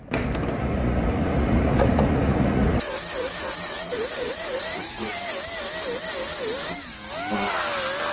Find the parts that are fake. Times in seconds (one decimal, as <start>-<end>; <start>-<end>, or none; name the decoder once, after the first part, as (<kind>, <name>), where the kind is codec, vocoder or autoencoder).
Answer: 0.6-5.1 (vocoder, Vocos)